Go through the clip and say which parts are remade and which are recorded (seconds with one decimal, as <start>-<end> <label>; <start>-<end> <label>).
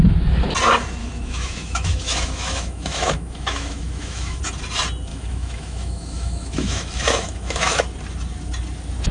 0.0-1.0 recorded; 1.0-4.4 remade; 4.4-5.1 recorded; 5.1-7.8 remade; 7.8-9.1 recorded